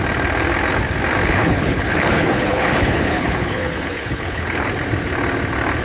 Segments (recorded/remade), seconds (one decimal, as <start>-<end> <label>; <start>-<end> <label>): 0.0-1.2 recorded; 1.2-4.7 remade; 4.7-5.8 recorded